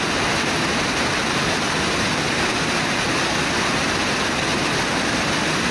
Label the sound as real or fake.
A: real